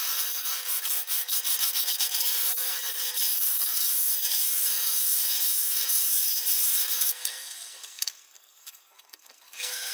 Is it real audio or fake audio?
fake